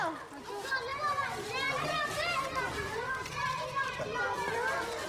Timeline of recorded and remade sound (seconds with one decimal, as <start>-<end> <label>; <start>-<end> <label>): 0.0-0.9 recorded; 0.9-4.0 remade; 4.0-5.1 recorded